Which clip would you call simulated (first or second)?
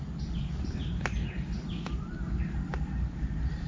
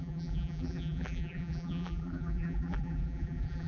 second